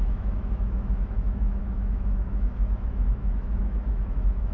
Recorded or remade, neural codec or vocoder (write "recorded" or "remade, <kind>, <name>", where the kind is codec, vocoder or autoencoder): remade, autoencoder, DAC-VAE